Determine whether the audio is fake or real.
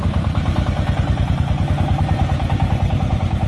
fake